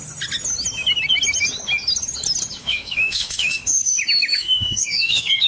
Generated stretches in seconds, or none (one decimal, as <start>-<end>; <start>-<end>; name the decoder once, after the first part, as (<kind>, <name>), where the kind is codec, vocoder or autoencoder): 2.6-3.9 (autoencoder, DAC-VAE); 4.3-5.5